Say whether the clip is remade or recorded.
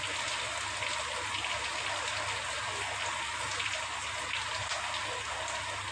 recorded